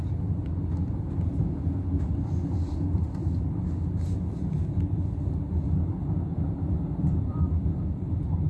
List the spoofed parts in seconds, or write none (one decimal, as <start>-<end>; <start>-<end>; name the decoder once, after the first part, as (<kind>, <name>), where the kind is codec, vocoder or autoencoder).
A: 6.3-8.5 (vocoder, BigVGAN v2)